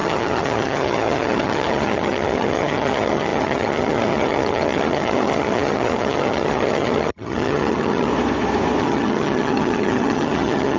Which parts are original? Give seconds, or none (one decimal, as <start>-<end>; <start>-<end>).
8.1-8.8